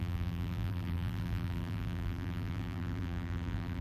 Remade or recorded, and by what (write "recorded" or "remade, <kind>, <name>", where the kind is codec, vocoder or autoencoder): remade, vocoder, BigVGAN v2